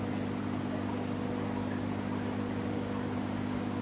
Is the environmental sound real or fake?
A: real